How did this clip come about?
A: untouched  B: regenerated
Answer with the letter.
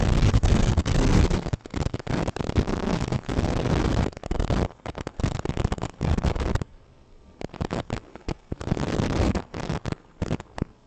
B